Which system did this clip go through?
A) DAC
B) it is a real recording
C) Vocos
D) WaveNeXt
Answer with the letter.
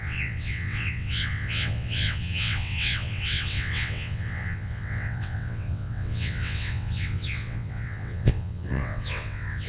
D